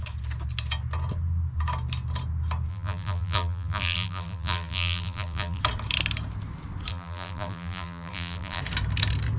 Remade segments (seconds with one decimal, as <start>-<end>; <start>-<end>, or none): 2.7-5.6; 6.9-8.6

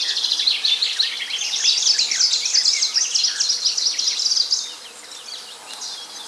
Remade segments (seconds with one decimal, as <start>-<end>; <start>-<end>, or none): none